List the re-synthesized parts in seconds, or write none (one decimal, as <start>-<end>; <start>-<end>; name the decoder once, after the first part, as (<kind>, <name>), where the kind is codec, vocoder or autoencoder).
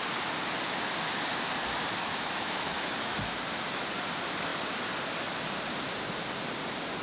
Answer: 2.0-3.1 (autoencoder, DAC-VAE)